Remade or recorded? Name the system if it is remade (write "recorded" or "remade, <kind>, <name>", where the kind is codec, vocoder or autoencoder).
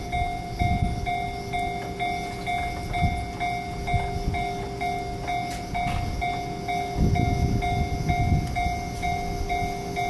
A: recorded